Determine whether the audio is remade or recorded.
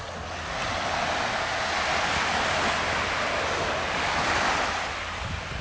recorded